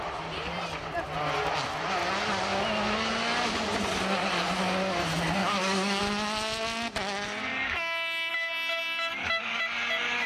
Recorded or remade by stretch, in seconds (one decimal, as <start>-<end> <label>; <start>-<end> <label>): 0.0-5.4 recorded; 5.4-6.0 remade; 6.0-7.5 recorded; 7.5-8.3 remade; 8.3-9.1 recorded; 9.1-9.6 remade; 9.6-10.3 recorded